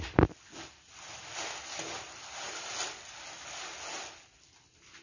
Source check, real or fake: real